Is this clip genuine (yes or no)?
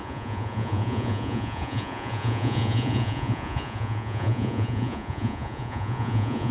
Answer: no